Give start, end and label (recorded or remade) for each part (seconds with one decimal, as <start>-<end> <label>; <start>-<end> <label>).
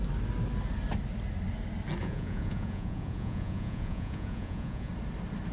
0.0-2.0 recorded; 2.0-4.9 remade; 4.9-5.5 recorded